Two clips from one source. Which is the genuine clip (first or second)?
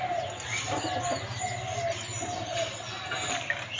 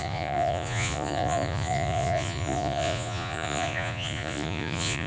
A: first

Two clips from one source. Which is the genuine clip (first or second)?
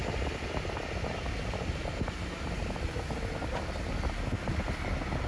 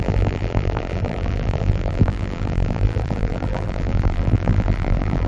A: first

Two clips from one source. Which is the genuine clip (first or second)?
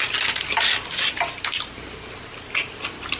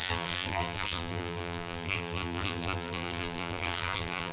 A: first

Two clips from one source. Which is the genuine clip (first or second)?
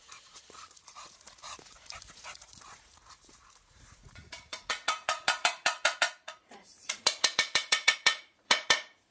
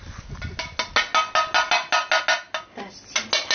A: second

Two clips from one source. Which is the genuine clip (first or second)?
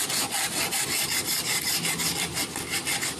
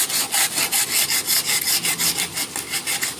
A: second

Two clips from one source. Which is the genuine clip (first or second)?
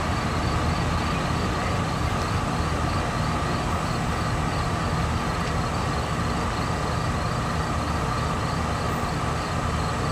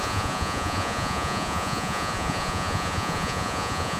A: first